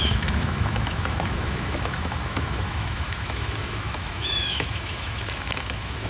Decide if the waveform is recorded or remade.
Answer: remade